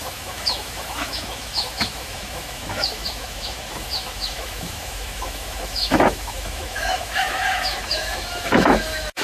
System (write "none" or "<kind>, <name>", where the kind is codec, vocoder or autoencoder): autoencoder, DAC-VAE